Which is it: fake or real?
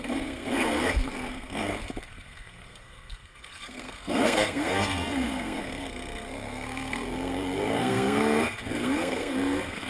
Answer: fake